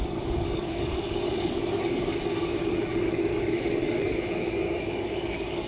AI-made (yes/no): yes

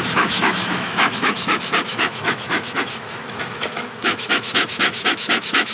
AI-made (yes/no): yes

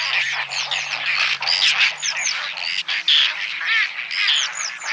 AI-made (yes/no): no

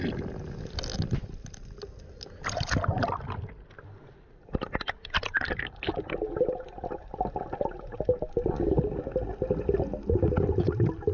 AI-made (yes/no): no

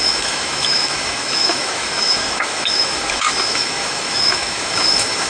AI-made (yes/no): yes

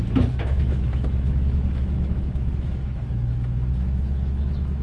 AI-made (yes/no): yes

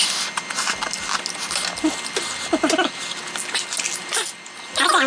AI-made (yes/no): no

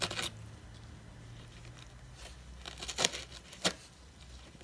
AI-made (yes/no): no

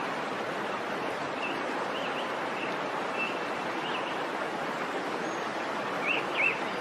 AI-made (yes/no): no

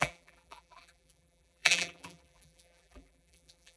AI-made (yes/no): yes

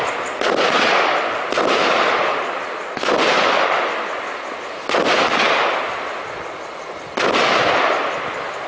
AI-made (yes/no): no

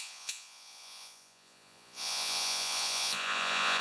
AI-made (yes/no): yes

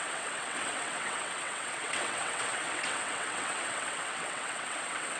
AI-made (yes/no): yes